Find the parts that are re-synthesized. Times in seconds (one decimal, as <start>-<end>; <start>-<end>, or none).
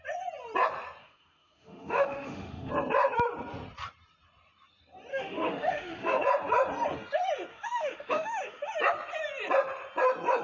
1.0-2.7; 5.1-6.2; 7.5-8.7